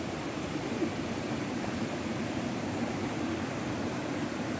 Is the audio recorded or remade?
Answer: remade